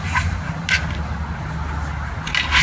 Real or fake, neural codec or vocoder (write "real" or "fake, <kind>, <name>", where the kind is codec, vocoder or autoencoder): real